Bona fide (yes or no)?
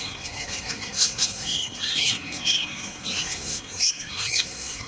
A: no